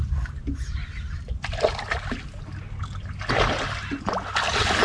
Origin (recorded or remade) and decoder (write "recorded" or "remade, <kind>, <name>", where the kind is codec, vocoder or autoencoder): recorded